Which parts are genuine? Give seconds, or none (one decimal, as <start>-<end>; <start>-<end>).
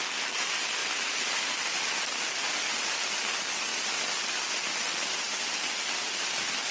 0.0-0.8; 2.0-6.7